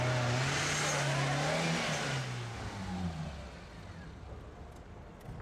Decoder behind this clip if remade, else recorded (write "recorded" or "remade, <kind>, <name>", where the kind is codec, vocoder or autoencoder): recorded